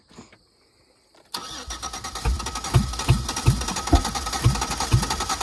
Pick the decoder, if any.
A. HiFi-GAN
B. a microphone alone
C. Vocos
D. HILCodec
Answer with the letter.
B